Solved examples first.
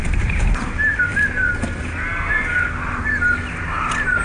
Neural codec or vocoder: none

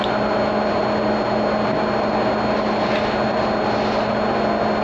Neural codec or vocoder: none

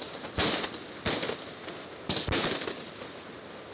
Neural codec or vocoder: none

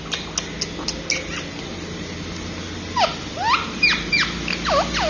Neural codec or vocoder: none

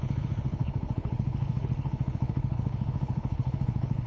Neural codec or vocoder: codec, HILCodec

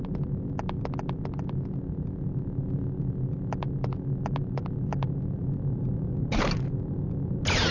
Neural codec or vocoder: none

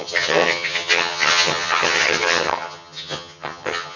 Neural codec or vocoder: vocoder, HiFi-GAN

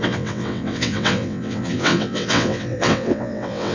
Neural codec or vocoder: vocoder, WaveNeXt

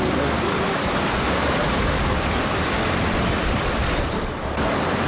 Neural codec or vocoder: vocoder, BigVGAN v2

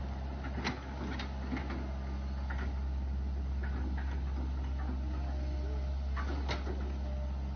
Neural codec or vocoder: none